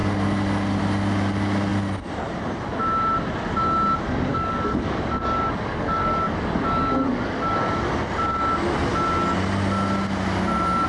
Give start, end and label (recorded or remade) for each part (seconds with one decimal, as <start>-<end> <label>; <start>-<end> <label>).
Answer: 0.0-4.3 recorded; 4.3-7.9 remade; 7.9-10.9 recorded